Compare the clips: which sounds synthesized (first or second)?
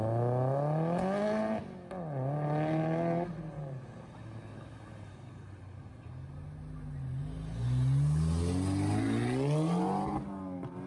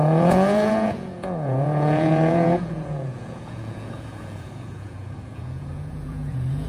second